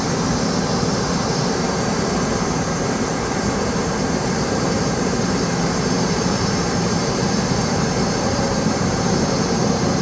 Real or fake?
fake